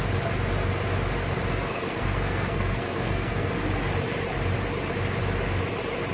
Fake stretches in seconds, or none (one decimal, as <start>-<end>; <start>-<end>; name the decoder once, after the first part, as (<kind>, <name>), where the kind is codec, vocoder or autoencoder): 1.5-3.5 (codec, SNAC)